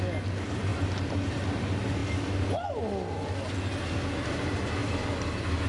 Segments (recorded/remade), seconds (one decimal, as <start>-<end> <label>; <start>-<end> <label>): 0.0-5.7 recorded